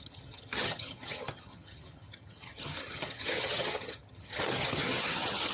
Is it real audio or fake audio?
fake